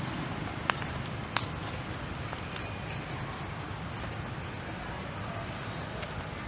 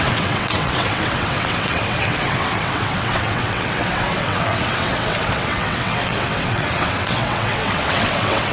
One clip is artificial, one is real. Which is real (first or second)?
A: first